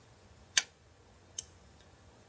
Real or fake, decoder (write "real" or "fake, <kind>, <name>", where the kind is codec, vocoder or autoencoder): fake, vocoder, Vocos